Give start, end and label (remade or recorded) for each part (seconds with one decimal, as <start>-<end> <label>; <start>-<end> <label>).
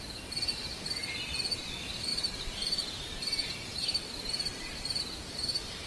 0.0-1.0 recorded; 1.0-1.7 remade; 1.7-2.1 recorded; 2.1-5.0 remade; 5.0-5.9 recorded